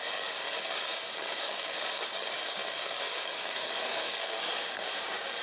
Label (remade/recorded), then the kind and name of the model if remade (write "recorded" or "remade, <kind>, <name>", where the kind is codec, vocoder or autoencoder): remade, codec, DAC